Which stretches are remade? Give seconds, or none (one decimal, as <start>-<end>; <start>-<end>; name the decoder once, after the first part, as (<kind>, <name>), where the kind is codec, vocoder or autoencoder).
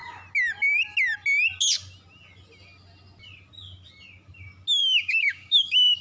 4.8-6.0 (codec, DAC)